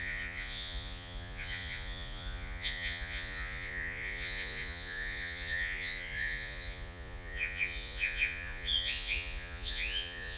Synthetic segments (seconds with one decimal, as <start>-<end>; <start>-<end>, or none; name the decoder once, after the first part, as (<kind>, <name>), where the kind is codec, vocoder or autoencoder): 0.0-10.4 (vocoder, Vocos)

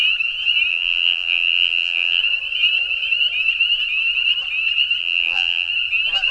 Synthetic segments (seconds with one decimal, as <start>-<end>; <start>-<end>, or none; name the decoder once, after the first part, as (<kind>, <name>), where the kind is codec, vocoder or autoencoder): 0.7-2.2 (vocoder, BigVGAN v2); 5.0-5.7